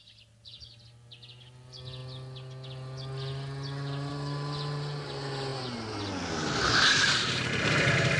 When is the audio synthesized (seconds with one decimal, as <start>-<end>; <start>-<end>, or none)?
0.0-2.0; 4.1-5.5; 7.6-8.2